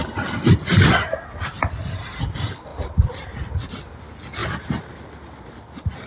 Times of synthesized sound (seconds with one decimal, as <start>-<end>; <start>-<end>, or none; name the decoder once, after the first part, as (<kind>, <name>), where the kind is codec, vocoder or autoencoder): 2.7-3.7 (vocoder, BigVGAN v2); 4.4-4.9